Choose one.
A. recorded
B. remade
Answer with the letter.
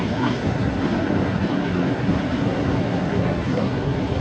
B